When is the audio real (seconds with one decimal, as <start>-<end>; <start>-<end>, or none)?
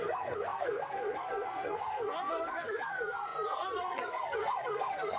none